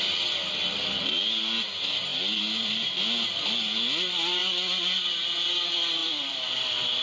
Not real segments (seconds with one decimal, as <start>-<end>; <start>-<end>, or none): 2.1-2.9; 6.0-7.0